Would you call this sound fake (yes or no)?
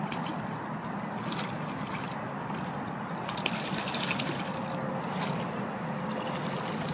no